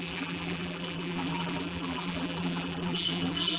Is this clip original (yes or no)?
no